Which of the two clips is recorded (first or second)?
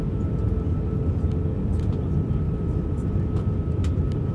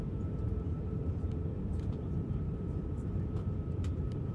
first